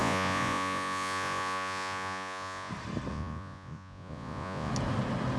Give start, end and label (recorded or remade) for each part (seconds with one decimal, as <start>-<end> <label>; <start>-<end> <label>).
0.0-2.7 remade; 2.7-3.1 recorded; 3.1-4.7 remade; 4.7-5.4 recorded